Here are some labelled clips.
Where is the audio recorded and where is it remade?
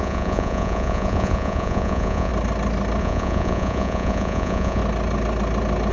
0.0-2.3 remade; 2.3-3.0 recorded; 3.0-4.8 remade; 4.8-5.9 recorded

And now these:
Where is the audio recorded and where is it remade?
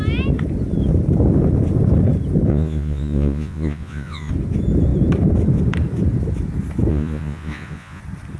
0.0-2.5 recorded; 2.5-4.3 remade; 4.3-6.9 recorded; 6.9-8.0 remade; 8.0-8.4 recorded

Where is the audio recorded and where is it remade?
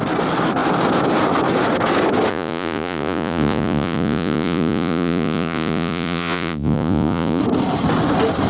0.0-2.3 recorded; 2.3-7.4 remade; 7.4-8.5 recorded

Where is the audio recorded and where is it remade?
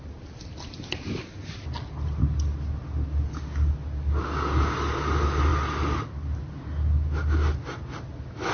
0.0-8.5 recorded